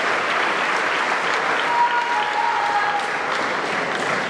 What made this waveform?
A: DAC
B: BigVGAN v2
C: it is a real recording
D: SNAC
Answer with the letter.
C